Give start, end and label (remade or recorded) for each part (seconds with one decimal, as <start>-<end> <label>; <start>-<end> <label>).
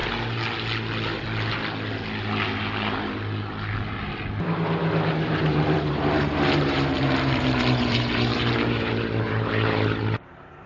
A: 0.0-5.1 recorded; 5.1-10.7 remade